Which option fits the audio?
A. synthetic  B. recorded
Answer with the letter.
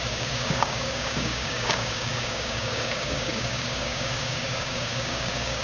A